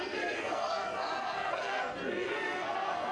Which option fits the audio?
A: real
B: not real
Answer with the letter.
B